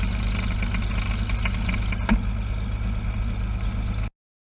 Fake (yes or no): no